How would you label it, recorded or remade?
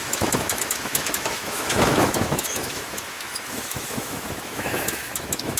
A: remade